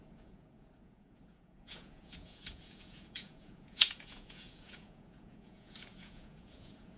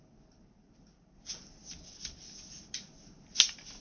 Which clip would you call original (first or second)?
second